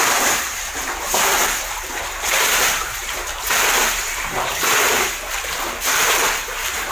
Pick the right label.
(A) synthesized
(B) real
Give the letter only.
A